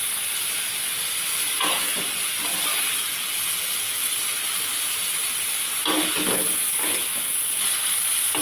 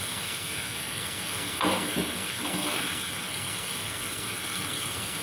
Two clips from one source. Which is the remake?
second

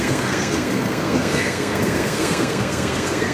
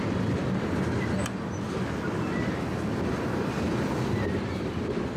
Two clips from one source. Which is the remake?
first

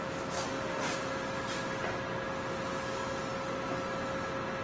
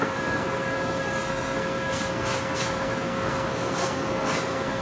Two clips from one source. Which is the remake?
second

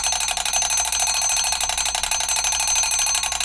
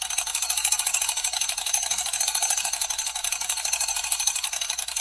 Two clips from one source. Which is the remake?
second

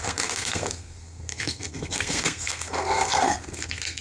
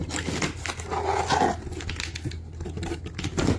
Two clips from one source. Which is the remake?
first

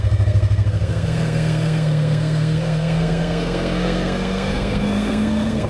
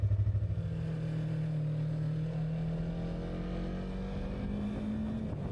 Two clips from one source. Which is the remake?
first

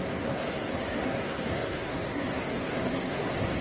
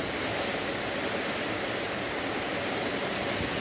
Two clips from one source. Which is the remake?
first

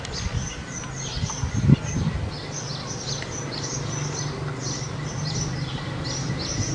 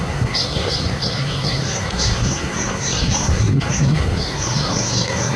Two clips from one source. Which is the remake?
second